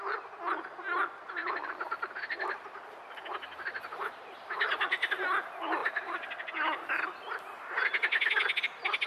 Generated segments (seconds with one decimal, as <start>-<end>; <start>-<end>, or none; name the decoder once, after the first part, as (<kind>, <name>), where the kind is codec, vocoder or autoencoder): 1.4-4.8 (vocoder, BigVGAN v2)